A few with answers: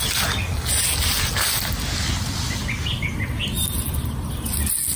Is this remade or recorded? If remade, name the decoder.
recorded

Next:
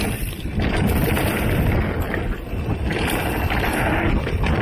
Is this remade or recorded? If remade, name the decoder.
recorded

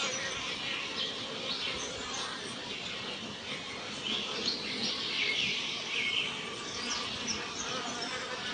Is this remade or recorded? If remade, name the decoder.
recorded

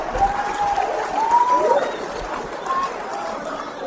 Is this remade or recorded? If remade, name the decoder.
recorded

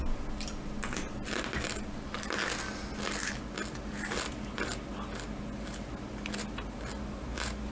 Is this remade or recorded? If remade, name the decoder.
recorded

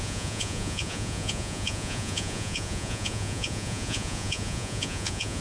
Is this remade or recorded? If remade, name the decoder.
remade, vocoder, Vocos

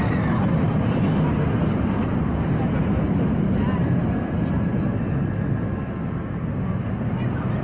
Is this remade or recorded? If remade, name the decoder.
recorded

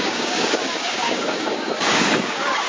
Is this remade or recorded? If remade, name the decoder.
remade, codec, DAC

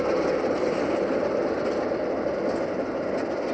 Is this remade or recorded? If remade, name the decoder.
recorded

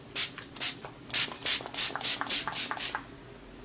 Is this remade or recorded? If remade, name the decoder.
recorded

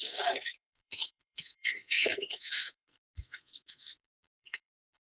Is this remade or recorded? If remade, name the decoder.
remade, codec, SNAC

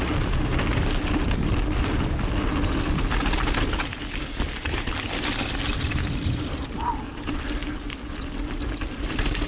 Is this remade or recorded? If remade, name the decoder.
recorded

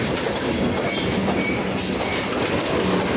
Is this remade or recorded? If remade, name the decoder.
recorded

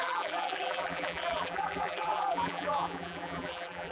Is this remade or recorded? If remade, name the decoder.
remade, vocoder, BigVGAN v2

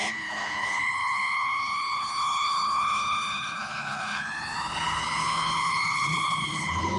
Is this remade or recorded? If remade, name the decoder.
remade, codec, HILCodec